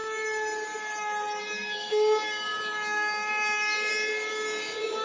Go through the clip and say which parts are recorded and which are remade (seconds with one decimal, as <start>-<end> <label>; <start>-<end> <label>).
0.0-1.4 recorded; 1.4-5.0 remade